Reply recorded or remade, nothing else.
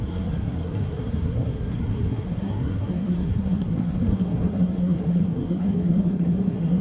remade